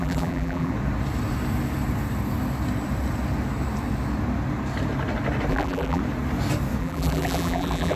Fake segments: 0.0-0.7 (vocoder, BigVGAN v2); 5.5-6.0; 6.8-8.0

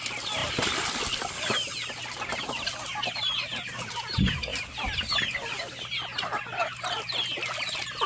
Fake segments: none

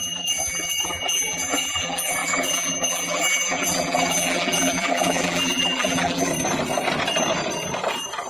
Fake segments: 0.0-6.3 (vocoder, BigVGAN v2)

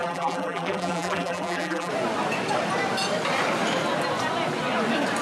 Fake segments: 0.0-1.9 (vocoder, BigVGAN v2)

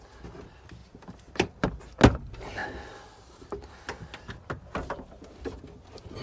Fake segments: 0.8-1.5 (vocoder, BigVGAN v2)